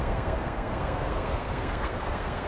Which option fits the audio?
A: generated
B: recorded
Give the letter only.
A